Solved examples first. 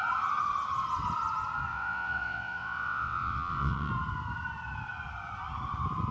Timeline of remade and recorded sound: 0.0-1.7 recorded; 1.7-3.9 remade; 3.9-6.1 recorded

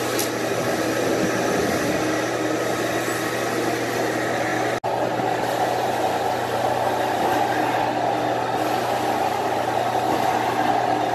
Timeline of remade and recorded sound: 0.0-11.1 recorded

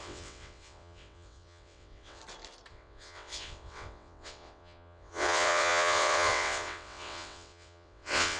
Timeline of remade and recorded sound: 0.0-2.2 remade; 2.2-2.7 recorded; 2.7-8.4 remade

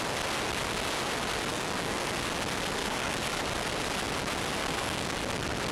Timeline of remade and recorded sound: 0.0-1.5 recorded; 1.5-2.1 remade; 2.1-2.8 recorded; 2.8-3.3 remade; 3.3-4.6 recorded; 4.6-5.2 remade; 5.2-5.7 recorded

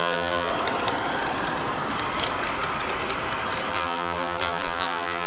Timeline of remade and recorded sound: 0.0-0.5 remade; 0.5-3.7 recorded; 3.7-5.3 remade